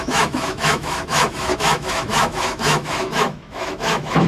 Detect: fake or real fake